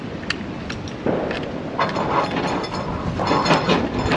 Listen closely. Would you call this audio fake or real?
real